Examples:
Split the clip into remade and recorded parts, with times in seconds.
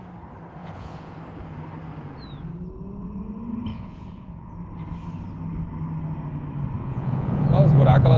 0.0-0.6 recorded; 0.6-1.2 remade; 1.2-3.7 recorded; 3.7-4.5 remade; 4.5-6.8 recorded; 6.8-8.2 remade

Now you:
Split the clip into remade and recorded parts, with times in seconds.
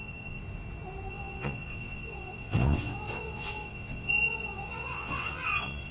0.0-0.4 remade; 0.4-1.1 recorded; 1.1-5.9 remade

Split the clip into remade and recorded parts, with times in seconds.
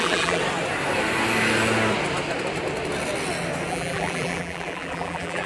0.0-0.4 remade; 0.4-3.7 recorded; 3.7-5.5 remade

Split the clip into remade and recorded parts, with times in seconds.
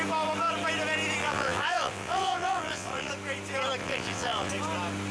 0.0-1.2 recorded; 1.2-3.1 remade; 3.1-3.8 recorded; 3.8-4.5 remade; 4.5-5.1 recorded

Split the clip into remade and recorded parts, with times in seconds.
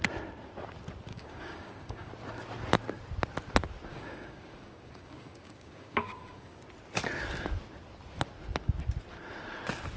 0.0-1.1 recorded; 1.1-2.1 remade; 2.1-3.9 recorded; 3.9-6.6 remade; 6.6-10.0 recorded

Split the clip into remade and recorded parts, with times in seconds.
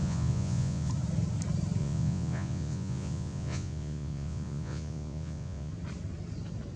0.0-0.9 remade; 0.9-1.8 recorded; 1.8-5.7 remade; 5.7-6.8 recorded